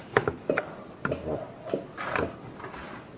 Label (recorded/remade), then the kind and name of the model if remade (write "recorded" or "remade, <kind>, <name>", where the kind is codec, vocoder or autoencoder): recorded